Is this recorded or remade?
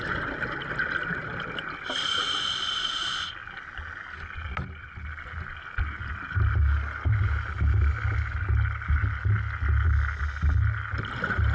recorded